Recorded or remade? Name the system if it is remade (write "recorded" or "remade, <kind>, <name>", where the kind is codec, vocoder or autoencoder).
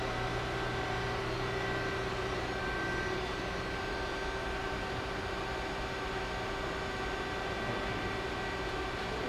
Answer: recorded